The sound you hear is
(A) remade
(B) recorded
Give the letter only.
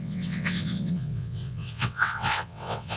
A